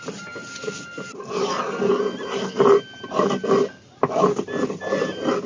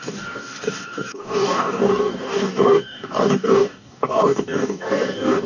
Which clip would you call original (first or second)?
first